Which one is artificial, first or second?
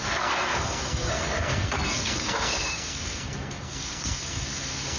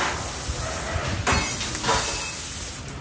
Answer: first